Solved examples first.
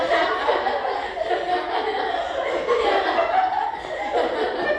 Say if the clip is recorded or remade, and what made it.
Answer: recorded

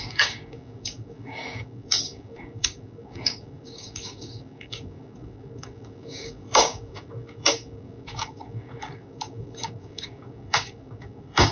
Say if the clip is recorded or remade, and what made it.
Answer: remade, codec, DAC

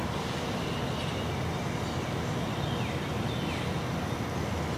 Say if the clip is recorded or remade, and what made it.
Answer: recorded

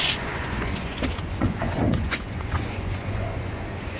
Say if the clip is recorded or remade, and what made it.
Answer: remade, vocoder, Vocos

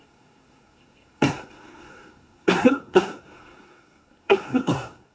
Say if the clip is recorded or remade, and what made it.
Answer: remade, codec, SNAC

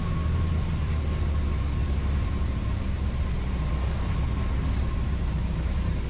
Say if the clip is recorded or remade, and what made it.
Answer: remade, vocoder, BigVGAN v2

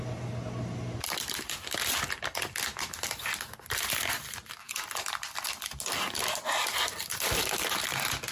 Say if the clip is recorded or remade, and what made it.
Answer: recorded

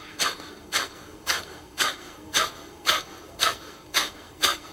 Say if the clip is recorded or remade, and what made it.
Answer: remade, codec, SNAC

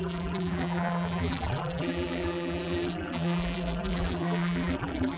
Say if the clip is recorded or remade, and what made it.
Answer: remade, vocoder, BigVGAN v2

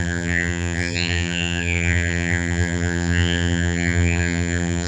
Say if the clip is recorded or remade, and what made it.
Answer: remade, vocoder, BigVGAN v2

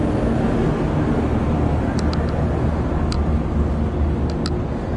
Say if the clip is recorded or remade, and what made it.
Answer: recorded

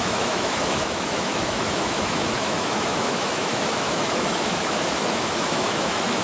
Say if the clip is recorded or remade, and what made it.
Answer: remade, autoencoder, DAC-VAE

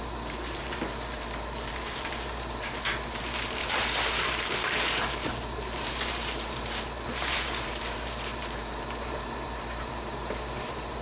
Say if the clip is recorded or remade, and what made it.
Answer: remade, vocoder, BigVGAN v2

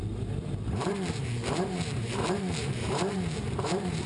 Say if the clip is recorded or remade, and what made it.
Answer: remade, vocoder, BigVGAN v2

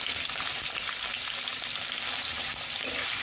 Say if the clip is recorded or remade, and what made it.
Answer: recorded